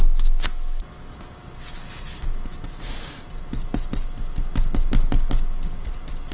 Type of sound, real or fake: real